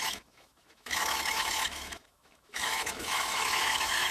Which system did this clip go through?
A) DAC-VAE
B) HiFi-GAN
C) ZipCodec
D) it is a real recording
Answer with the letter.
A